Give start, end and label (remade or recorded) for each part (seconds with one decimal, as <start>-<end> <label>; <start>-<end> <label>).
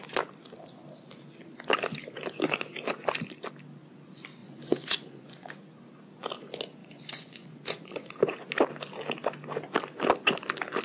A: 0.0-4.4 recorded; 4.4-5.5 remade; 5.5-6.8 recorded; 6.8-8.1 remade; 8.1-10.8 recorded